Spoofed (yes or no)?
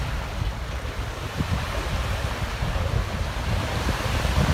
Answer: no